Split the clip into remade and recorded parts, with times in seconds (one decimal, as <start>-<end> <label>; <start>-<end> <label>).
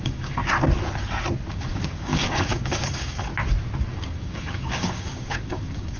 0.0-0.4 remade; 0.4-1.5 recorded; 1.5-3.3 remade; 3.3-3.9 recorded; 3.9-6.0 remade